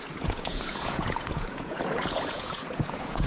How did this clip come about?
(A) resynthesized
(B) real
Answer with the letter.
A